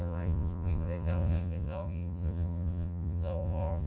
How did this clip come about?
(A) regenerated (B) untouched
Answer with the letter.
A